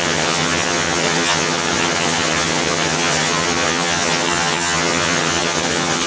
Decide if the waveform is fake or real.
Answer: fake